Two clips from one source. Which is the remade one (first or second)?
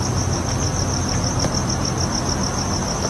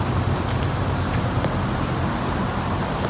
second